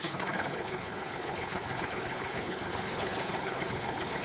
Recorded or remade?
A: remade